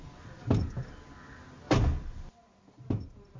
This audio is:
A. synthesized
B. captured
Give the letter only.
B